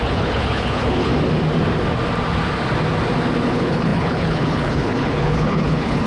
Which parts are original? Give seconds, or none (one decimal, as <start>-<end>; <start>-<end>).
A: 1.1-3.5

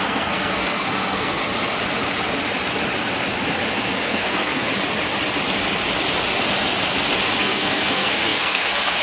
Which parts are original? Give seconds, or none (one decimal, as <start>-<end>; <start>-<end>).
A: 1.4-3.8; 4.7-7.4

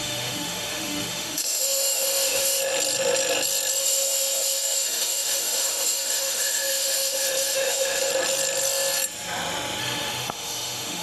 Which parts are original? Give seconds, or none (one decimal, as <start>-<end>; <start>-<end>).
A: 2.6-3.8; 8.1-9.8

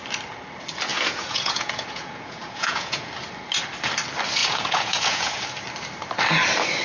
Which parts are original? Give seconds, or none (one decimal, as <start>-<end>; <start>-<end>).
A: 0.0-0.9; 3.1-4.4; 5.4-6.8

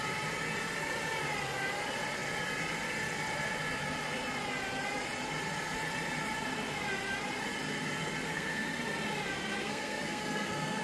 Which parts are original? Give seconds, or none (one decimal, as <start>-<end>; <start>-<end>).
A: 0.0-8.3; 8.8-9.6

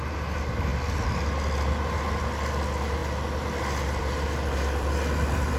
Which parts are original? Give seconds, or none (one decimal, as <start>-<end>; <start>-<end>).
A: 0.0-5.6

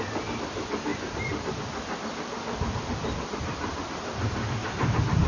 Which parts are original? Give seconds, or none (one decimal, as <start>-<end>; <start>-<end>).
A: 0.0-5.3